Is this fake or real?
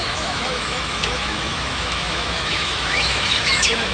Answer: fake